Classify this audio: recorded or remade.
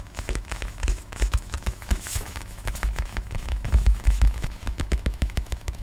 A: remade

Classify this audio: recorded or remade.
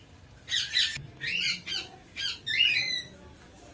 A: recorded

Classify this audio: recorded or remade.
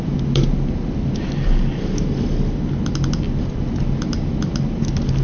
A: recorded